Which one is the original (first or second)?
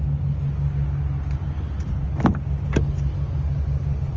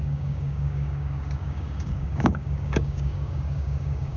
first